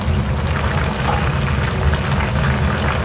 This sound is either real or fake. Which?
real